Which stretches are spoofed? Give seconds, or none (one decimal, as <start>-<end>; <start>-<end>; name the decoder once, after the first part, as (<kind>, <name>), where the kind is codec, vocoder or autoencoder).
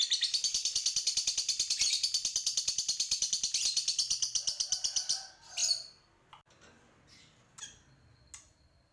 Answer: none